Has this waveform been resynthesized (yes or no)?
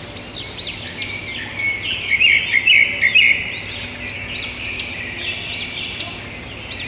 no